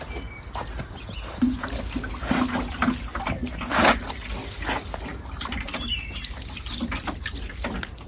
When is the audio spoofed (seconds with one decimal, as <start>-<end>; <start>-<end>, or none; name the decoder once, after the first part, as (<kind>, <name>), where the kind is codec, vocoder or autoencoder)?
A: 5.1-5.7 (vocoder, BigVGAN v2)